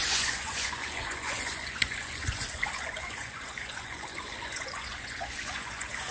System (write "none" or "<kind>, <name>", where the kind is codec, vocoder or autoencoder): vocoder, Vocos